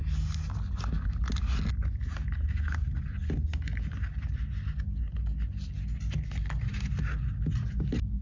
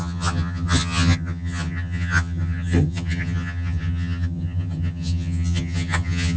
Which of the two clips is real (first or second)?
first